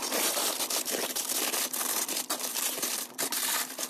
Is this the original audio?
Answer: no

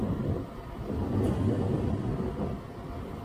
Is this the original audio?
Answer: yes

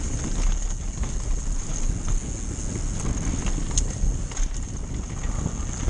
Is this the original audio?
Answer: yes